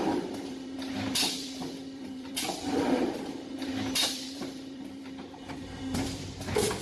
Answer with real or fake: fake